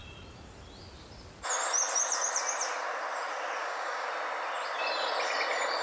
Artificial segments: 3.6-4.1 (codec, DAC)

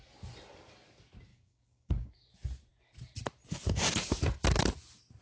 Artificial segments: 1.3-2.1 (codec, DAC)

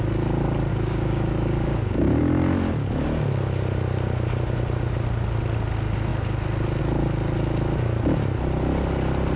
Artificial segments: 0.7-2.2 (codec, DAC)